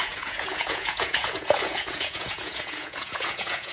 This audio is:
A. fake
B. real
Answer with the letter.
A